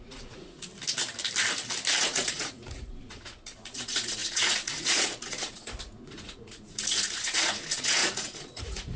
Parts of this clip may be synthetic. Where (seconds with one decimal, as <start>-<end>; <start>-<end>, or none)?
0.0-0.7; 2.0-9.0